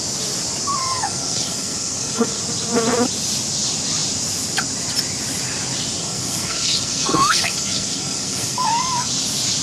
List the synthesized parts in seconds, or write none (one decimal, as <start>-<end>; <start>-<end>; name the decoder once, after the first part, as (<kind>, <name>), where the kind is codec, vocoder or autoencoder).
0.8-2.4 (codec, SNAC); 6.0-9.1